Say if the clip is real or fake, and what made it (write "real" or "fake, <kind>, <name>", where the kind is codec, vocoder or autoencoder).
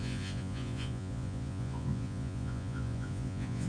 fake, vocoder, Vocos